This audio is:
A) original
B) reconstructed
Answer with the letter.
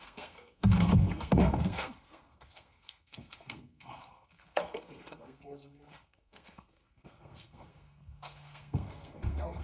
B